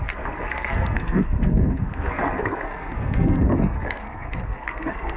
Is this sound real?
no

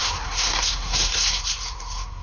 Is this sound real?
no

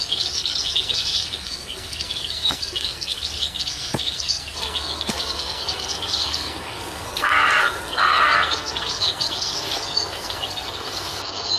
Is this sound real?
no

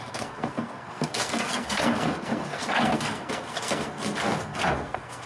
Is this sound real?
no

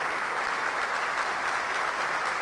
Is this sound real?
yes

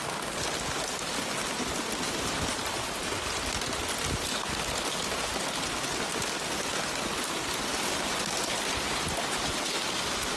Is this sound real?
yes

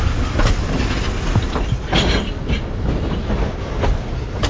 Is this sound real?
yes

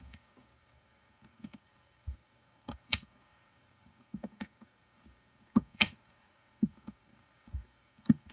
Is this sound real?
no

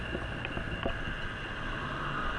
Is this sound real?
yes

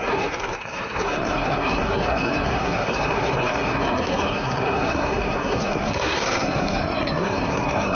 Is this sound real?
no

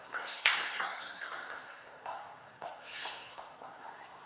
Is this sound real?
no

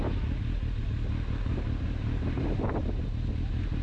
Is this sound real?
yes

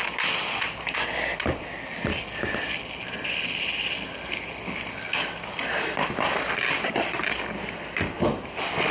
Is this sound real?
yes